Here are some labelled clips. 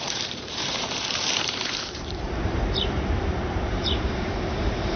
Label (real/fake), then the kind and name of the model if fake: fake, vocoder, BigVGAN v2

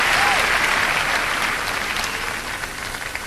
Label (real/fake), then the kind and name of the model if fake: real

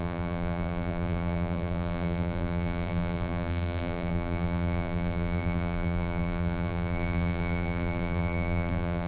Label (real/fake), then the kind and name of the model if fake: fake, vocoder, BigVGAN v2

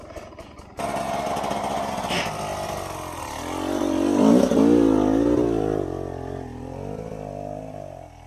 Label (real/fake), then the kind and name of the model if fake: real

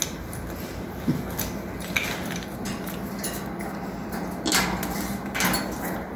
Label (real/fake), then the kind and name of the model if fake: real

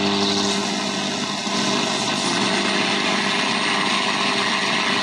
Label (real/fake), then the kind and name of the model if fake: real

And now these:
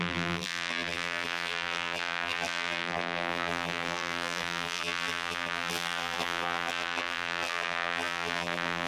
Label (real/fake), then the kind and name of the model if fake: fake, vocoder, BigVGAN v2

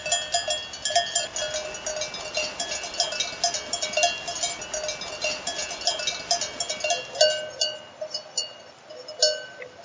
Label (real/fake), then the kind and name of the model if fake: real